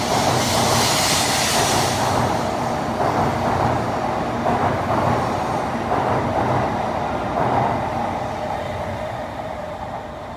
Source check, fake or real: real